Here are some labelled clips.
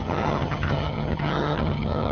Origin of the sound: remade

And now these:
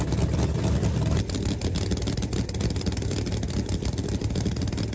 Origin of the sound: recorded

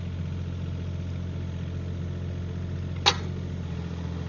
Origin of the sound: recorded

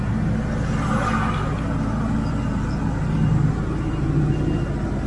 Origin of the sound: recorded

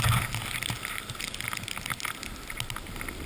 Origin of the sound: recorded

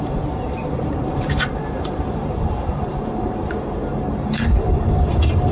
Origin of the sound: remade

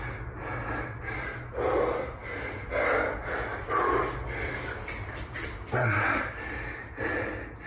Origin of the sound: recorded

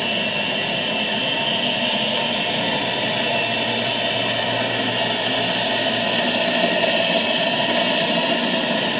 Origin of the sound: recorded